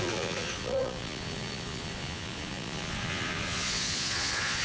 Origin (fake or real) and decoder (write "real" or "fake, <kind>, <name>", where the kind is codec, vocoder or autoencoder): fake, vocoder, Vocos